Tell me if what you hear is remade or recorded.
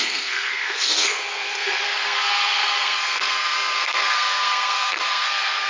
remade